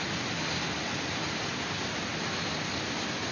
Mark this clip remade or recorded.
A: recorded